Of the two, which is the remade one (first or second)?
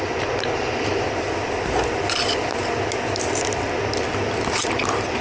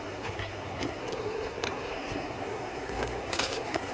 second